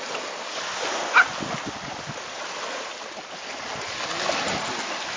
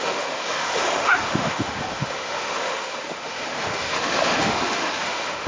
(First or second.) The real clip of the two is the first